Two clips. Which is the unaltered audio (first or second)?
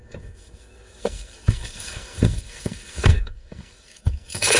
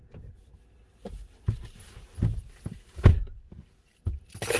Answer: second